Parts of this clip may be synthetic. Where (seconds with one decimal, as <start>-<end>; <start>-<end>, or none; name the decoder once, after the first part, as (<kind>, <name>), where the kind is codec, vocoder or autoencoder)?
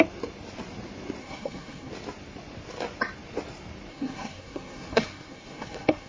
1.2-1.9 (codec, SNAC); 3.9-6.1